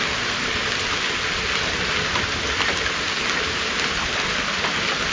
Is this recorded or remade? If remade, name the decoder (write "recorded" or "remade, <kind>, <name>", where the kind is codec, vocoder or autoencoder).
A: recorded